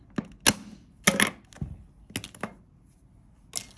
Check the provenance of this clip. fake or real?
real